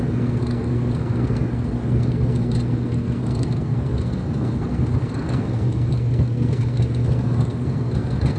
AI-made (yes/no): yes